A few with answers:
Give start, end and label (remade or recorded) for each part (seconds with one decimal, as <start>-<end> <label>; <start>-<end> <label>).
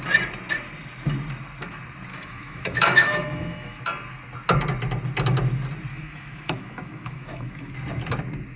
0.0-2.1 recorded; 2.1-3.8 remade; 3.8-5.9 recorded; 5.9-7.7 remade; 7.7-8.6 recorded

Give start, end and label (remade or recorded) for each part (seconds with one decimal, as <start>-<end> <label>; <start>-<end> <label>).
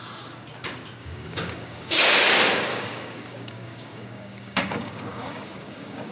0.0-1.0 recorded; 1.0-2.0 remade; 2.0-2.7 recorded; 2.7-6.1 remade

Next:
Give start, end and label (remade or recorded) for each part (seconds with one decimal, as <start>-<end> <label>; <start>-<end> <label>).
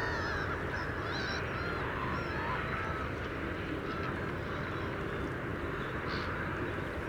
0.0-7.1 recorded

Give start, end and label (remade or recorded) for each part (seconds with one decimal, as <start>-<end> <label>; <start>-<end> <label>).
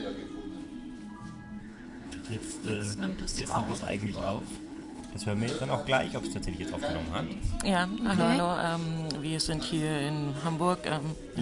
0.0-1.6 recorded; 1.6-5.0 remade; 5.0-11.4 recorded